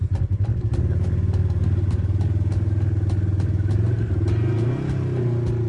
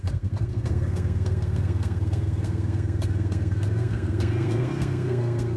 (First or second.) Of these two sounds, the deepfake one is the second